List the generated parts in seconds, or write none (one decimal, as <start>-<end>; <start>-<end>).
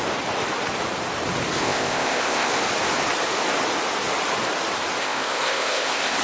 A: 1.6-2.5; 5.0-6.2